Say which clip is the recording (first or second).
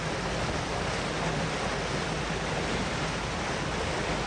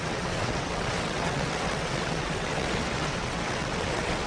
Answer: first